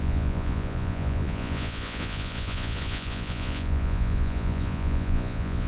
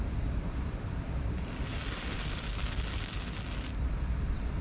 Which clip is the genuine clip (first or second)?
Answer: second